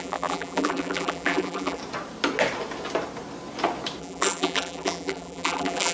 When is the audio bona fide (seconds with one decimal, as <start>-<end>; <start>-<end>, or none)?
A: 1.8-4.0